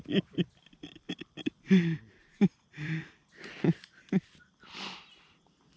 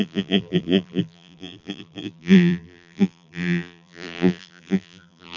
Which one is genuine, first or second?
first